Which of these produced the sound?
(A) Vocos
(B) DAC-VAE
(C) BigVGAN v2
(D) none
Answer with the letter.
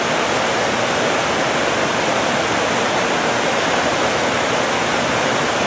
D